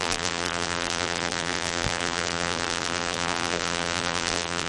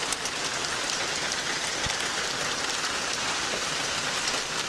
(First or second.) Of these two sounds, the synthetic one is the first